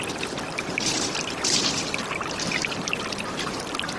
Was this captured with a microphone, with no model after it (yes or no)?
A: yes